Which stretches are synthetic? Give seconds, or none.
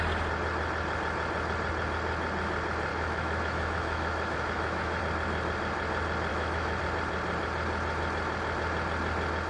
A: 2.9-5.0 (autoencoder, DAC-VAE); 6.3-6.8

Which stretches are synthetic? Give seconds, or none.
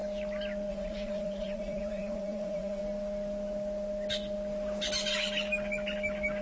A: 0.7-2.8 (vocoder, Vocos)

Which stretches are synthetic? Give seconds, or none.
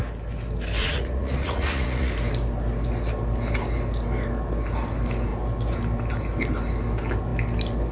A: 0.8-2.1 (vocoder, Vocos)